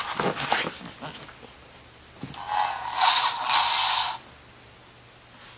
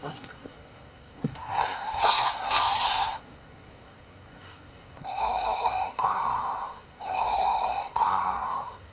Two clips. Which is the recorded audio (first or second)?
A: first